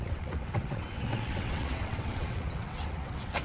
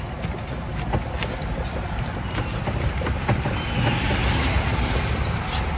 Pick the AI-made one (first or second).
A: first